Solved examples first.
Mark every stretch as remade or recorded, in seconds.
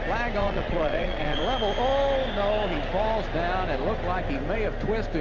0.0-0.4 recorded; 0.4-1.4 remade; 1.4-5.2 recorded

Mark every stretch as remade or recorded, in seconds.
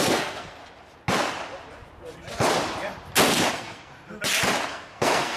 0.0-0.6 remade; 0.6-3.5 recorded; 3.5-3.9 remade; 3.9-4.7 recorded; 4.7-5.4 remade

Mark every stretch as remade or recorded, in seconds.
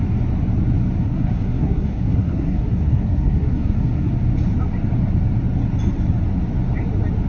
0.0-1.0 recorded; 1.0-4.1 remade; 4.1-7.3 recorded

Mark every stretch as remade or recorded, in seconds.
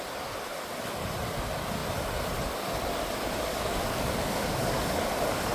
0.0-3.5 recorded; 3.5-5.5 remade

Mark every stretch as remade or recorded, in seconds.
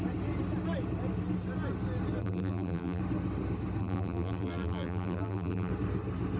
0.0-2.2 recorded; 2.2-3.0 remade; 3.0-3.8 recorded; 3.8-5.7 remade; 5.7-6.4 recorded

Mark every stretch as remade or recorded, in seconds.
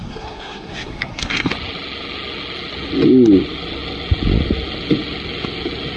0.0-1.5 remade; 1.5-6.0 recorded